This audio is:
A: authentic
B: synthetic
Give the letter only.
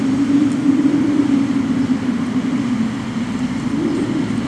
A